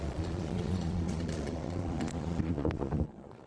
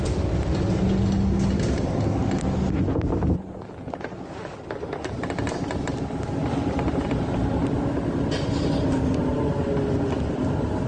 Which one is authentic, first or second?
second